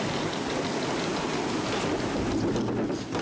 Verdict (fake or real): real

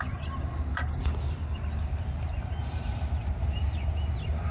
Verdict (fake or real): real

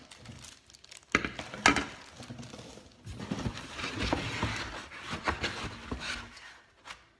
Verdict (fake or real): real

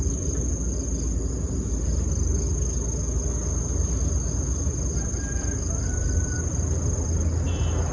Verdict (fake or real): real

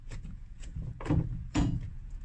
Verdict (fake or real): fake